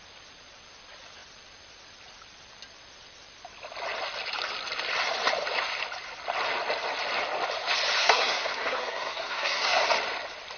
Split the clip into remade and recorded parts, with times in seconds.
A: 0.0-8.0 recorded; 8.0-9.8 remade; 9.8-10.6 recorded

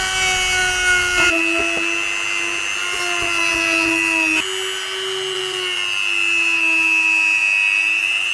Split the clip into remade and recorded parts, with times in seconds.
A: 0.0-8.3 recorded

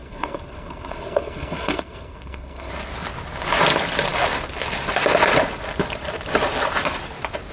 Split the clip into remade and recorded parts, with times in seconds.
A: 0.0-2.7 remade; 2.7-7.5 recorded

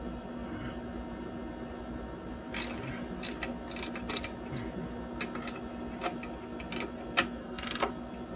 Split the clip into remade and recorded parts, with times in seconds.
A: 0.0-7.4 recorded; 7.4-7.9 remade; 7.9-8.4 recorded

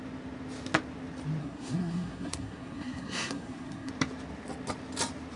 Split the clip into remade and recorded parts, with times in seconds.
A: 0.0-1.4 recorded; 1.4-3.9 remade; 3.9-5.4 recorded